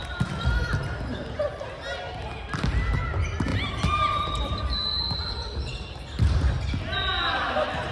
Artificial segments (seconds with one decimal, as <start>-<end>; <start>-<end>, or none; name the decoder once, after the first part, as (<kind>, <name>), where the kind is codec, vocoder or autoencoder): 3.5-6.5 (vocoder, BigVGAN v2)